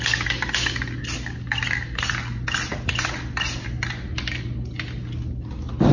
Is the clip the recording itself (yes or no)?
yes